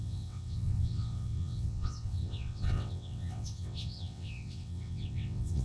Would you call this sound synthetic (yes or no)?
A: yes